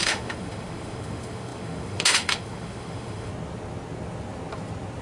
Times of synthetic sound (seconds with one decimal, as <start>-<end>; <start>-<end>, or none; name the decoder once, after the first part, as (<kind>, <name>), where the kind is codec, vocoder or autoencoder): 0.0-3.3 (autoencoder, DAC-VAE)